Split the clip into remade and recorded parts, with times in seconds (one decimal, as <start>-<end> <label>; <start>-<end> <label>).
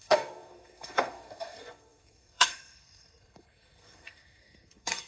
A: 0.0-5.1 remade